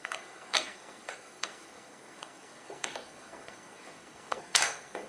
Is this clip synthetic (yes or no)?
yes